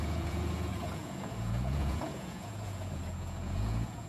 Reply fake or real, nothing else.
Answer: fake